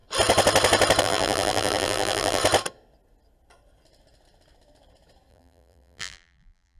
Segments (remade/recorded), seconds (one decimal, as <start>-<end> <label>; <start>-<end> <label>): 0.0-1.0 recorded; 1.0-2.4 remade; 2.4-5.3 recorded; 5.3-6.8 remade